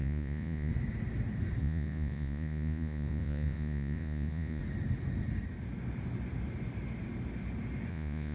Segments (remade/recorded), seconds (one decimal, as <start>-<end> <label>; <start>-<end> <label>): 0.0-0.7 remade; 0.7-1.6 recorded; 1.6-4.6 remade; 4.6-7.9 recorded; 7.9-8.3 remade